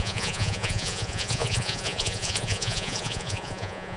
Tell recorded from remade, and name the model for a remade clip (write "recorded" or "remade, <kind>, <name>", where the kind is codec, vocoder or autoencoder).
remade, vocoder, Vocos